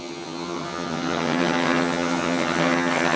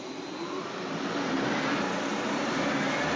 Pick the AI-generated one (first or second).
first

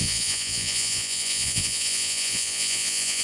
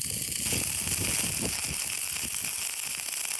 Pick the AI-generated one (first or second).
first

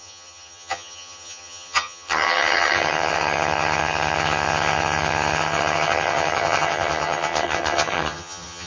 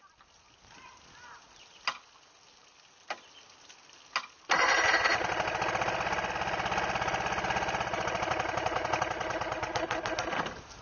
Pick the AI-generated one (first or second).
first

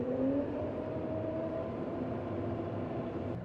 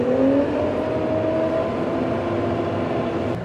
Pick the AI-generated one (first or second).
first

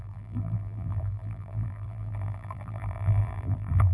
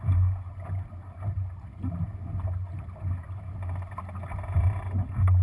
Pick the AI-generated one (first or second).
first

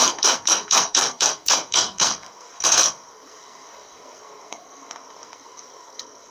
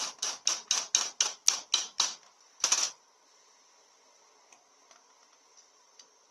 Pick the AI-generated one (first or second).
first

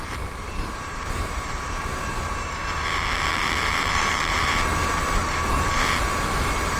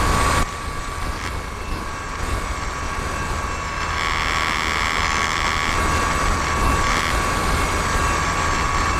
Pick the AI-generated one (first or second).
first